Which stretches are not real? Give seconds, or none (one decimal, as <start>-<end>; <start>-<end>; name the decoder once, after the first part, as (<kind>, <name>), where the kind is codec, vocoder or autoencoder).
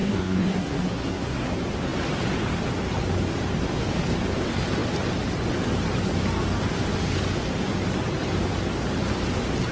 0.0-1.5 (codec, SNAC)